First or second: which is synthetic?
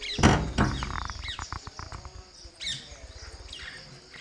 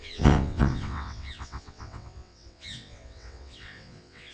second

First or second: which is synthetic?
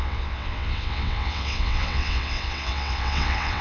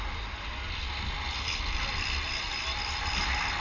first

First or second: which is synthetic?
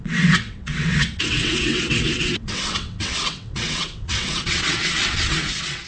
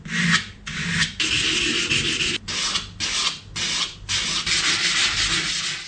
first